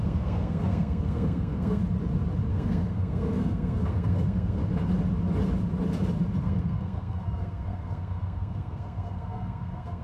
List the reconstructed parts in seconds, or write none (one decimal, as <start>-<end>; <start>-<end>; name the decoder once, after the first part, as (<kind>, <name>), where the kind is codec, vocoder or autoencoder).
0.0-1.8 (codec, SNAC); 2.5-4.6; 6.4-10.0